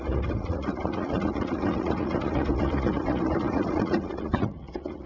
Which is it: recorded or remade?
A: remade